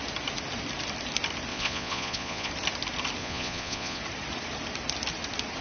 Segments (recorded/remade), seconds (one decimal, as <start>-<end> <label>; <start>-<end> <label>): 0.0-1.5 recorded; 1.5-2.5 remade; 2.5-3.2 recorded; 3.2-4.0 remade; 4.0-5.6 recorded